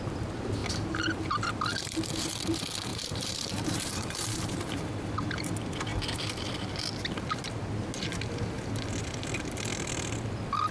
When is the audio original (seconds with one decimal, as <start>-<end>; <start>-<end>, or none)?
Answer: 0.0-2.9; 4.8-10.7